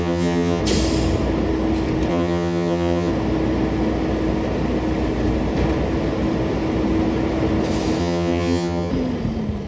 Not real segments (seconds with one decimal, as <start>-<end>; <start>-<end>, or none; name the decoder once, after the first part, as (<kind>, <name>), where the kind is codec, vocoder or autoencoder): 0.0-0.6 (vocoder, HiFi-GAN); 2.1-3.1; 8.0-8.9